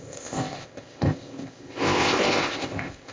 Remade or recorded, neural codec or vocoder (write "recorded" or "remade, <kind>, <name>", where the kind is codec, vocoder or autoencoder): remade, codec, ZipCodec